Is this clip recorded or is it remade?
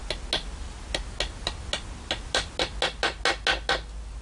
recorded